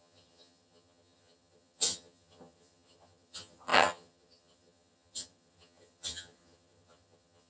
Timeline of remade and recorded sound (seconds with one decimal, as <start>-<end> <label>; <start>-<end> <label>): 0.0-7.5 remade